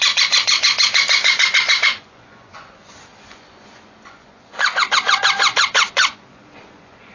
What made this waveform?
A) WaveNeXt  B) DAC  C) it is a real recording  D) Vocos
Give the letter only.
D